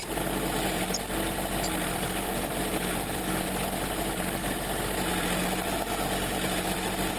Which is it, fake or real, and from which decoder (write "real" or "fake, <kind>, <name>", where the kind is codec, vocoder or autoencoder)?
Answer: real